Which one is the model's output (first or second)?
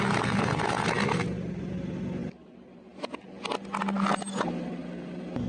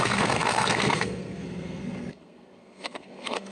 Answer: second